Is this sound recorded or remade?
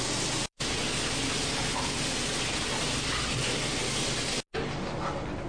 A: recorded